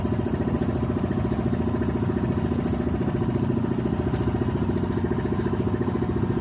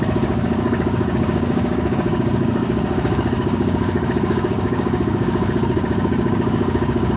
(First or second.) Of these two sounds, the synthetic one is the second